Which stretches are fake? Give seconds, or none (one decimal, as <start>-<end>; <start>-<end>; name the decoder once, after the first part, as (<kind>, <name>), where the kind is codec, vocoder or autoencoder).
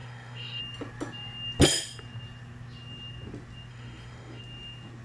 0.0-0.6 (autoencoder, DAC-VAE); 3.7-4.4